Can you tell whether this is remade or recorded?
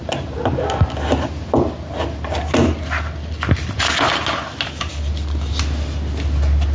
recorded